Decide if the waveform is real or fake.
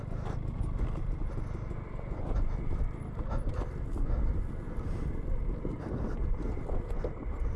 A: real